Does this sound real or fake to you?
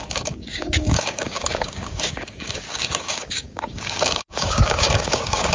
fake